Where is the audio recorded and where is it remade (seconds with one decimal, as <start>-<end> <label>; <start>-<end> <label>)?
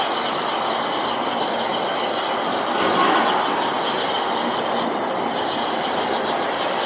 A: 0.0-6.9 recorded